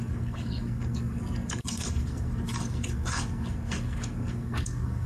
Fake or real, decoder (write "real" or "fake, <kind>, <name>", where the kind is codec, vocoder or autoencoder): fake, codec, SNAC